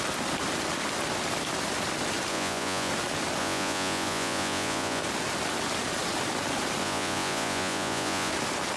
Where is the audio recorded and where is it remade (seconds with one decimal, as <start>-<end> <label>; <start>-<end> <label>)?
0.0-2.3 recorded; 2.3-2.9 remade; 2.9-3.4 recorded; 3.4-5.0 remade; 5.0-6.8 recorded; 6.8-8.3 remade; 8.3-8.8 recorded